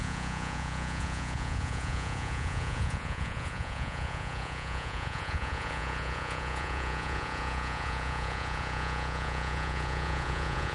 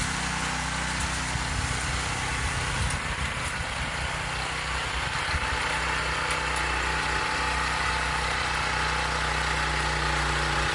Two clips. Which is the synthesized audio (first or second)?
first